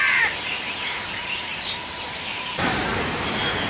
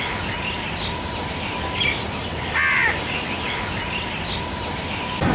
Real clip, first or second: second